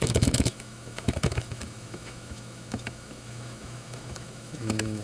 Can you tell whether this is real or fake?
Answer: fake